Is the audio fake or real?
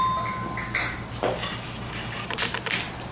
real